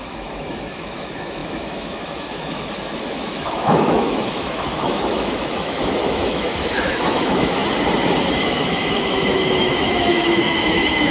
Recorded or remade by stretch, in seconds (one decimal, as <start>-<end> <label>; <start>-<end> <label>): 0.0-7.6 remade; 7.6-8.4 recorded; 8.4-11.1 remade

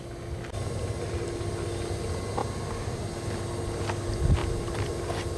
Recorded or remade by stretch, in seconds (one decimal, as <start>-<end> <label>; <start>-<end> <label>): 0.0-5.4 recorded